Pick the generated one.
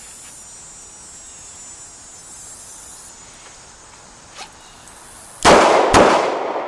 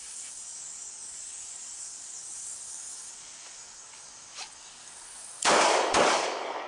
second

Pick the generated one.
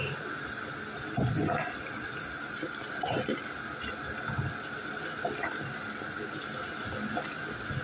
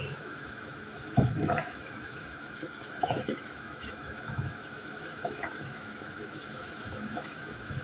second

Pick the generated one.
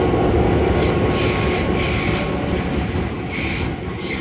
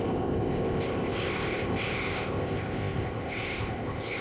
second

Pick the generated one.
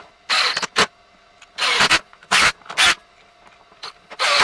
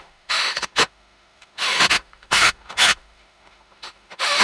second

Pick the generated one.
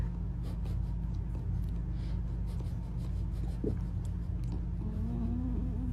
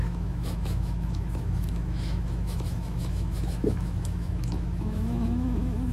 second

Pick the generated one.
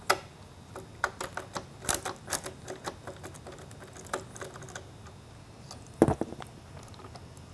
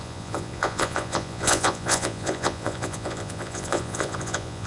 second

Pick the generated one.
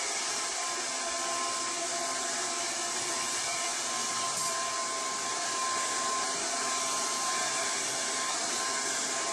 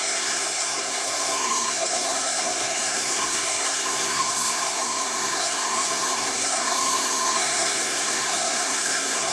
second